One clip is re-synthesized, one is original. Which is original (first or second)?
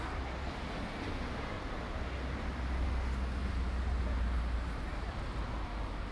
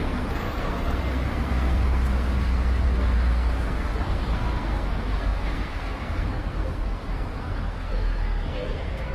first